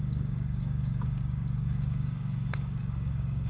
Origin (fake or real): fake